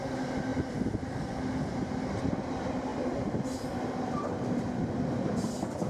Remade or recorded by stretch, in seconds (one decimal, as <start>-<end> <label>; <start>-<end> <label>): 0.0-0.5 recorded; 0.5-1.0 remade; 1.0-5.9 recorded